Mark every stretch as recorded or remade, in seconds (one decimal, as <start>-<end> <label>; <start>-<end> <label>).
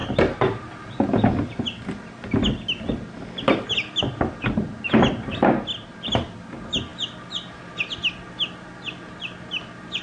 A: 0.0-10.0 recorded